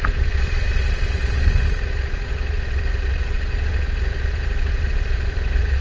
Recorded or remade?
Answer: remade